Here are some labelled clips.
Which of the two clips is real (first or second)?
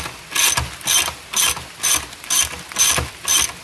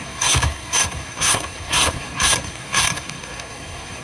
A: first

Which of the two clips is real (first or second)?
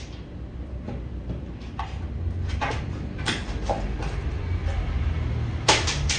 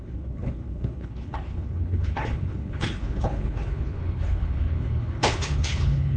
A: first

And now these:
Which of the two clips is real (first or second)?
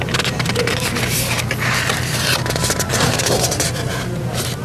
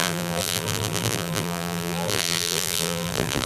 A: first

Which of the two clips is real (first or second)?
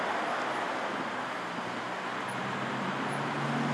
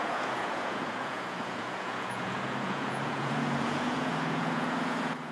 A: first